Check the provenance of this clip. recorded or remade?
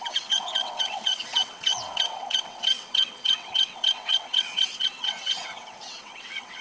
remade